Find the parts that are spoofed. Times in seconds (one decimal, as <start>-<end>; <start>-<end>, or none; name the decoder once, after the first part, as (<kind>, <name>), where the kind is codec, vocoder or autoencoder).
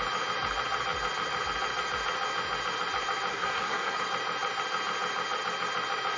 3.3-4.0 (codec, SNAC)